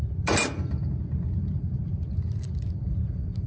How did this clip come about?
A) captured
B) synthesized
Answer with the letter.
A